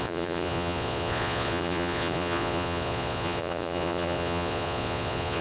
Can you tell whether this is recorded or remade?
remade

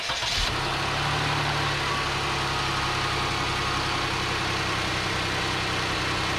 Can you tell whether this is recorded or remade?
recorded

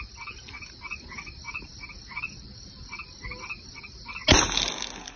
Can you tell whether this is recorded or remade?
recorded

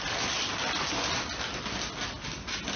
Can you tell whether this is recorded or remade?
recorded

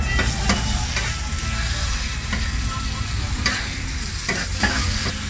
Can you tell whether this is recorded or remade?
recorded